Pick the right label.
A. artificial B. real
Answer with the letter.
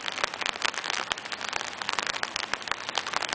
B